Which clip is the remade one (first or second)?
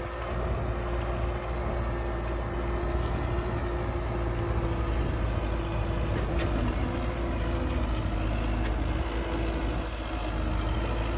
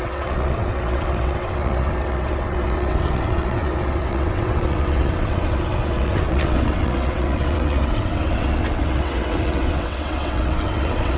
second